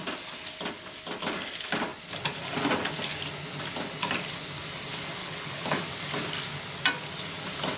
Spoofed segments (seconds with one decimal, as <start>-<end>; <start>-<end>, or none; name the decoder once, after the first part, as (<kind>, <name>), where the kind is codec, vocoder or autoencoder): 5.2-5.8 (codec, HILCodec)